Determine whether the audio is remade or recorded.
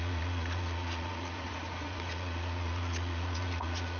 remade